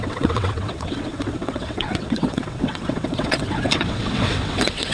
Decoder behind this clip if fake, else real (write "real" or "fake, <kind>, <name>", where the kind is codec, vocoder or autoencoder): fake, vocoder, WaveNeXt